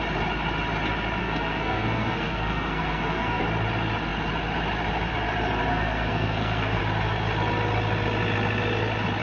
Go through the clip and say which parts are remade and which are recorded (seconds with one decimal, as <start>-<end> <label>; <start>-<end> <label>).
0.0-1.2 recorded; 1.2-3.4 remade; 3.4-5.7 recorded; 5.7-6.8 remade; 6.8-9.2 recorded